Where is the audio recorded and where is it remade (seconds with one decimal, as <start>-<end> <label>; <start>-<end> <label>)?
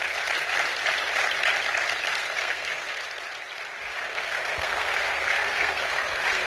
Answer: 0.0-2.1 recorded; 2.1-3.0 remade; 3.0-4.1 recorded; 4.1-6.5 remade